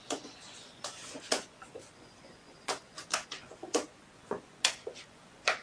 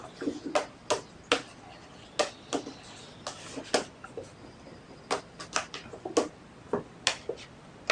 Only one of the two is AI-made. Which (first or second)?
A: first